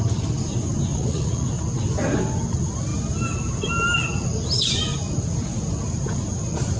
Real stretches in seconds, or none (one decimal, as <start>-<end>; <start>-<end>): 0.0-0.9; 1.5-6.8